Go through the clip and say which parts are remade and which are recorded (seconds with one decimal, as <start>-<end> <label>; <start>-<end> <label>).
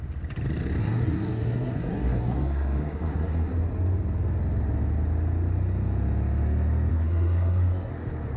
0.0-0.8 recorded; 0.8-3.5 remade; 3.5-6.9 recorded; 6.9-7.9 remade; 7.9-8.4 recorded